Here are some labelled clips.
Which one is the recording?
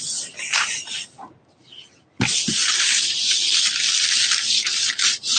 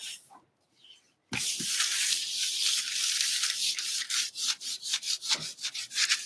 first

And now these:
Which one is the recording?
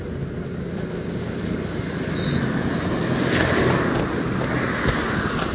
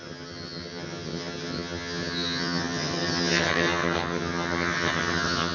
first